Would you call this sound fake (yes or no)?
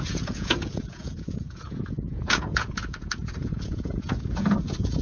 yes